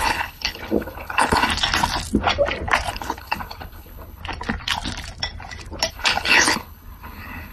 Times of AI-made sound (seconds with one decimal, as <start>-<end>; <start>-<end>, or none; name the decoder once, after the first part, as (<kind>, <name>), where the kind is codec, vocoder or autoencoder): 0.0-1.5 (codec, HILCodec); 2.9-4.2; 5.9-7.5

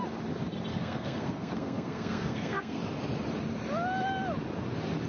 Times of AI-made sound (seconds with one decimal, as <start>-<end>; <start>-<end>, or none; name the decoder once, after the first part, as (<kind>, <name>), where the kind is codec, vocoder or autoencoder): 0.7-2.8 (codec, SNAC)